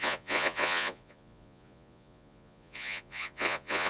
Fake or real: fake